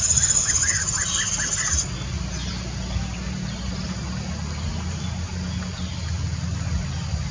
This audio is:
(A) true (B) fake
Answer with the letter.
A